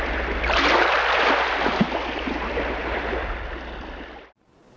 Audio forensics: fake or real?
real